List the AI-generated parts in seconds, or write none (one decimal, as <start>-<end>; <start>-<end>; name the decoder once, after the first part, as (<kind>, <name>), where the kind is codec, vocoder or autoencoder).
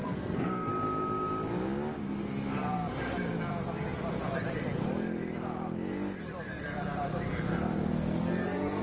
0.0-0.7 (codec, SNAC); 7.9-8.8